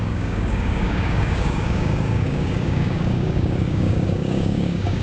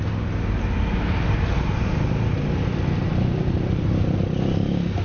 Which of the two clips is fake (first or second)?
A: first